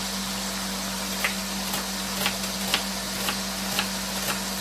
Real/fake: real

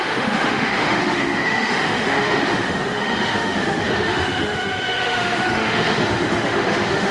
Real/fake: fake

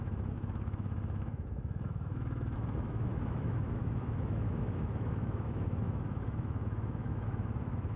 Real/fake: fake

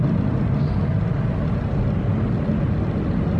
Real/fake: real